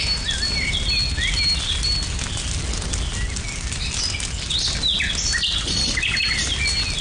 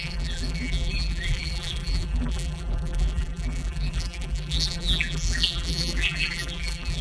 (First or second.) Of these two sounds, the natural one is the first